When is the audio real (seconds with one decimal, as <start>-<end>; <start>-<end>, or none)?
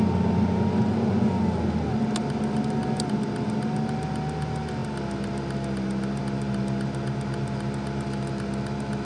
0.0-9.0